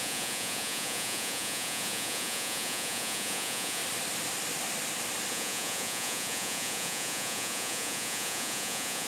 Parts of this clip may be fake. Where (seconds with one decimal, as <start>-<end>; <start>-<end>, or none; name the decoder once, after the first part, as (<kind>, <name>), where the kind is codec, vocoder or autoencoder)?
0.0-3.8 (vocoder, Vocos); 5.3-9.1

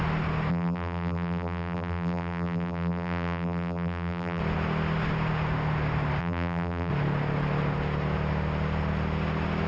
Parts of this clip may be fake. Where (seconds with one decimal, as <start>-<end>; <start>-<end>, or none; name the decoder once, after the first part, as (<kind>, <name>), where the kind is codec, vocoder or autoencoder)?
0.5-4.4 (vocoder, BigVGAN v2); 6.2-6.9